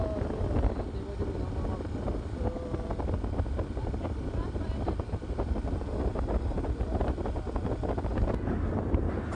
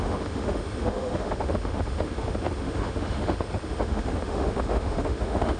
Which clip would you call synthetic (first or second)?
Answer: second